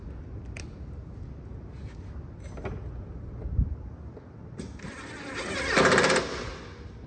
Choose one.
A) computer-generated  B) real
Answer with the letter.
B